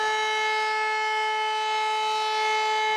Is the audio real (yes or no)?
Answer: yes